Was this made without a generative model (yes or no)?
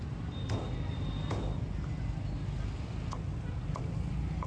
yes